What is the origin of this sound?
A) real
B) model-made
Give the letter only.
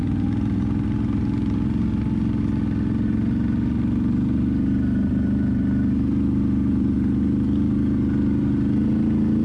A